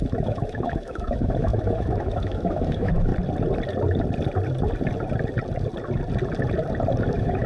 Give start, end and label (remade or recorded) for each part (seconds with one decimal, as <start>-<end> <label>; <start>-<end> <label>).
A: 0.0-3.1 remade; 3.1-7.1 recorded; 7.1-7.5 remade